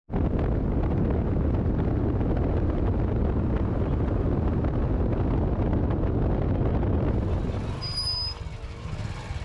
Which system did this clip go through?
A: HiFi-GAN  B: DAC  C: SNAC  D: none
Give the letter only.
D